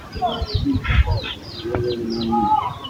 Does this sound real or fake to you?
real